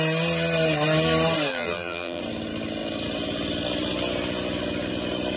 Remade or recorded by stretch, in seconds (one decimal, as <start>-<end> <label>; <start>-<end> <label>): 0.0-1.5 recorded; 1.5-2.2 remade; 2.2-5.4 recorded